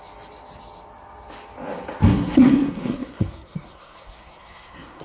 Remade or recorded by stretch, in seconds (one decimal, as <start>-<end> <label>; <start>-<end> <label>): 0.0-2.0 recorded; 2.0-5.0 remade